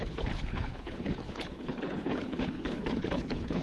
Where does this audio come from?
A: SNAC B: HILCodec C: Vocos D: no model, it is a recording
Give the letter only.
B